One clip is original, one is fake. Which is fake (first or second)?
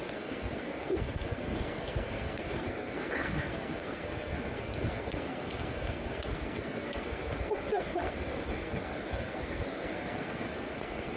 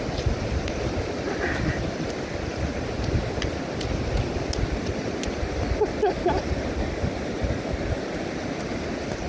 first